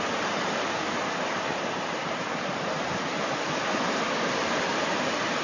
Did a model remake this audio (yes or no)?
yes